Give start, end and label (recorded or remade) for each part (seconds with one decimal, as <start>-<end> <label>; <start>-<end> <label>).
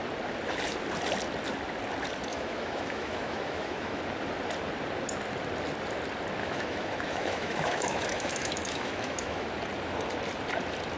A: 0.0-2.3 recorded; 2.3-4.0 remade; 4.0-6.4 recorded; 6.4-9.5 remade; 9.5-11.0 recorded